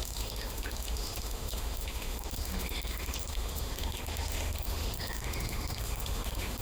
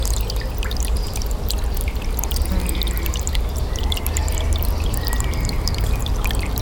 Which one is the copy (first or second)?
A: first